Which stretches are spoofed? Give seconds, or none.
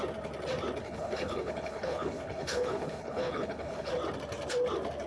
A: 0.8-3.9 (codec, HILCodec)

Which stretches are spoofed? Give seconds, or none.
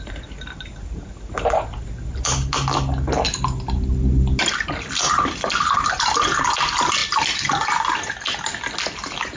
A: none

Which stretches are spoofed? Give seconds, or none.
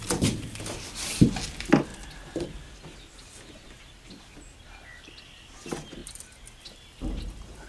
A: none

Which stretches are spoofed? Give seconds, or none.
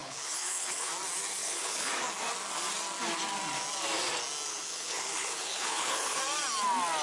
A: 0.0-0.9 (codec, HILCodec); 1.4-1.9; 4.5-6.2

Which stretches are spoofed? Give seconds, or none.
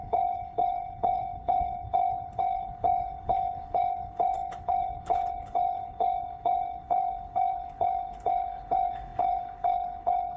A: 0.0-10.4 (codec, HILCodec)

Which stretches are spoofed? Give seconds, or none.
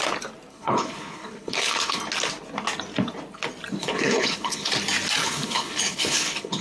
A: 0.5-2.0 (codec, HILCodec); 3.8-4.7; 5.2-6.6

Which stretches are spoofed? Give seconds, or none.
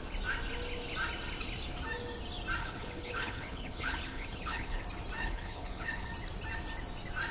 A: 2.6-4.8 (codec, HILCodec); 5.2-6.1